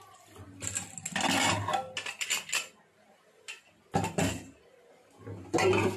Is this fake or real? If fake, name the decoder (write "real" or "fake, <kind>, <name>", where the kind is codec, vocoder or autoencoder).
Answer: real